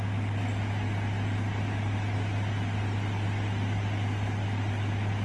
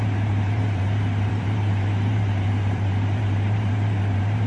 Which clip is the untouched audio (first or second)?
first